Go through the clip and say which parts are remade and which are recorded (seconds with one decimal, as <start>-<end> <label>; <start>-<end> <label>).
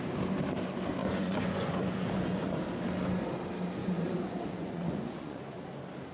0.0-1.0 recorded; 1.0-2.5 remade; 2.5-3.8 recorded; 3.8-5.6 remade; 5.6-6.1 recorded